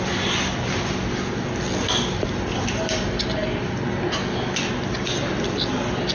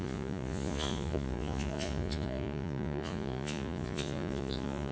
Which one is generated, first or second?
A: second